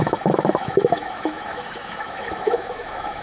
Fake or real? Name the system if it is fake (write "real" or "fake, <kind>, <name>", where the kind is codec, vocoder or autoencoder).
fake, autoencoder, DAC-VAE